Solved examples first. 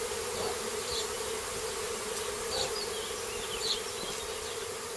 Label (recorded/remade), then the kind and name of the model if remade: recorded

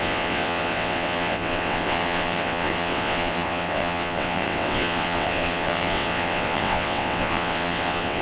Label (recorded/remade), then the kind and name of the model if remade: remade, vocoder, WaveNeXt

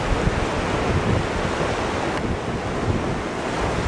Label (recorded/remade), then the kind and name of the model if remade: recorded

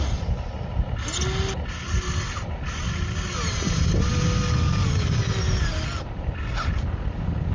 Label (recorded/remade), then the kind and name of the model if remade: recorded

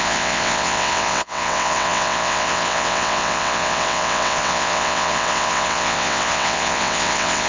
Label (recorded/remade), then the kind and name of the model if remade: remade, vocoder, WaveNeXt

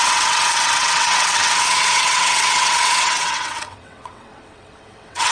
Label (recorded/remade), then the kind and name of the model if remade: remade, vocoder, WaveNeXt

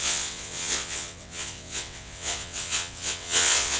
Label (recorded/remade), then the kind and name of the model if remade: remade, vocoder, WaveNeXt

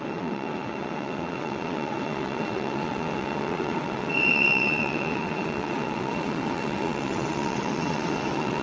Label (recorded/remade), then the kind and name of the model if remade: remade, vocoder, WaveNeXt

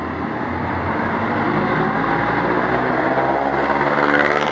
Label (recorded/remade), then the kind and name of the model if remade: recorded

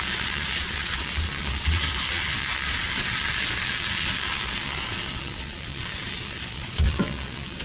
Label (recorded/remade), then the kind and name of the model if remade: remade, vocoder, WaveNeXt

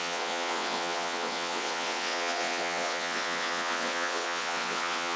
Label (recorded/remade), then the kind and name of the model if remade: remade, vocoder, WaveNeXt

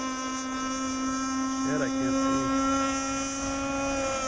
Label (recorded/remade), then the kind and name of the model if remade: recorded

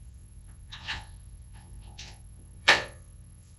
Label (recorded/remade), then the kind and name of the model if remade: remade, vocoder, WaveNeXt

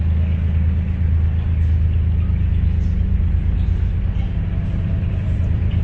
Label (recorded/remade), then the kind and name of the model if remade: recorded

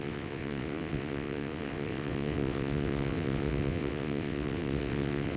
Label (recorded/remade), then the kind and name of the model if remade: remade, vocoder, WaveNeXt